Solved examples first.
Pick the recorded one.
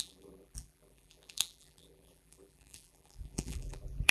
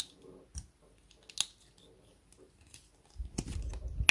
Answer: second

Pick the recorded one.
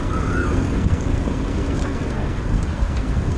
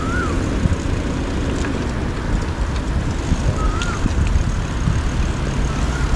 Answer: second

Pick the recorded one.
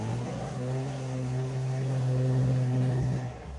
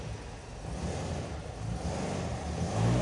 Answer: second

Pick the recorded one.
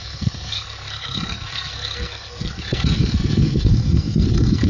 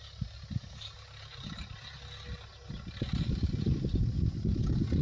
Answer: second